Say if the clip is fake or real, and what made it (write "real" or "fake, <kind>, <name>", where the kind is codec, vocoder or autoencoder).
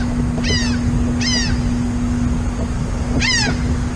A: real